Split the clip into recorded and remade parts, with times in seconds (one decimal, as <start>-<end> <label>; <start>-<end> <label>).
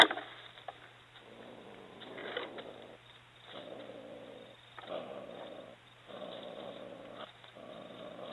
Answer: 0.0-8.3 recorded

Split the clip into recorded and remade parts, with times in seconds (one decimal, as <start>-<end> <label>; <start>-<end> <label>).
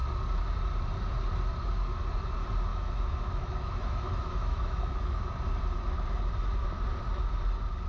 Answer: 0.0-2.7 recorded; 2.7-5.2 remade; 5.2-7.9 recorded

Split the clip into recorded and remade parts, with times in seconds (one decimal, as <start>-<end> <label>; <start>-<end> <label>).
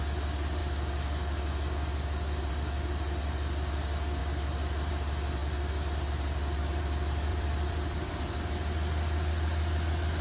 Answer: 0.0-7.3 recorded; 7.3-8.1 remade; 8.1-10.2 recorded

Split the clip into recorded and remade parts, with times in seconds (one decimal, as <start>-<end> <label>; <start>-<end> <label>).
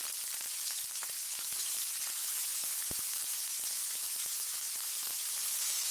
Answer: 0.0-0.5 recorded; 0.5-1.8 remade; 1.8-2.2 recorded; 2.2-5.9 remade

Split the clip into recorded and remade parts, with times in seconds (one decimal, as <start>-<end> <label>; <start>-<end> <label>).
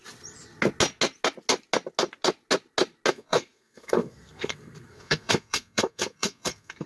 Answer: 0.0-3.1 recorded; 3.1-6.9 remade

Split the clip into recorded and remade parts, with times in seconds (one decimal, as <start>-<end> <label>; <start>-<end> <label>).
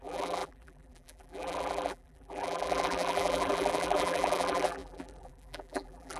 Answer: 0.0-6.2 remade